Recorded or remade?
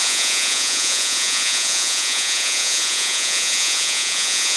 remade